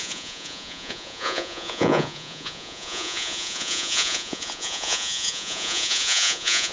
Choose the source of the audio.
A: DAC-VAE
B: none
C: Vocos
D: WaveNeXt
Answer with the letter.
C